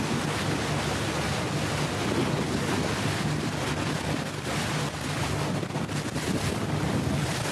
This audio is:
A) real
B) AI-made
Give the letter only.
A